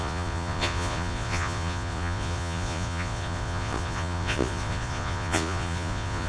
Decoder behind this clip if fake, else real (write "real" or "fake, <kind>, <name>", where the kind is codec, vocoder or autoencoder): fake, vocoder, Vocos